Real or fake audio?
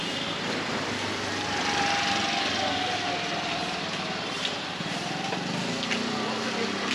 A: real